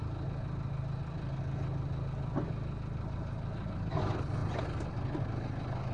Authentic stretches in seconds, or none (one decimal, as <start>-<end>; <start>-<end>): 0.0-5.9